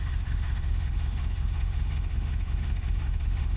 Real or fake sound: fake